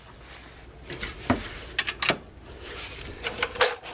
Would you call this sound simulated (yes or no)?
no